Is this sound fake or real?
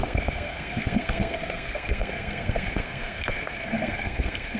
fake